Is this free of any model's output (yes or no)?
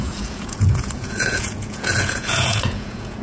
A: no